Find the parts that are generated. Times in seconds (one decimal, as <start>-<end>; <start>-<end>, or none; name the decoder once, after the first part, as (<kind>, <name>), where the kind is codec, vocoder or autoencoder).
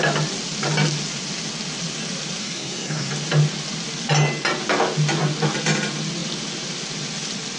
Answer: 2.4-3.1 (codec, SNAC)